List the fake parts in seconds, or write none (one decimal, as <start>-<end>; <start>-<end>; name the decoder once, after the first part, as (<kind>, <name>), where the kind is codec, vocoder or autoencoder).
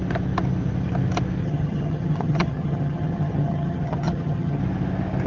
1.4-4.6 (vocoder, HiFi-GAN)